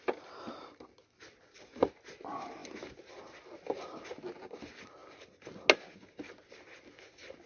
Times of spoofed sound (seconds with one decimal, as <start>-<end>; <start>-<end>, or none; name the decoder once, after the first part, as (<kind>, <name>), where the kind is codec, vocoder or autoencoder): none